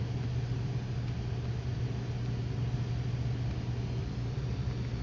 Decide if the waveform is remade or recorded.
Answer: recorded